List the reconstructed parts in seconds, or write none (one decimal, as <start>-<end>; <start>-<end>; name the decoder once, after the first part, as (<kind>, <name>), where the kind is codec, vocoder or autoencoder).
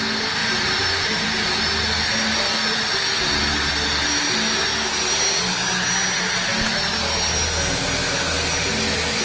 0.4-1.5 (vocoder, BigVGAN v2)